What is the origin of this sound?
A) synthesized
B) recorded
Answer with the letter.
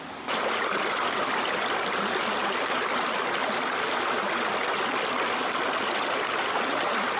B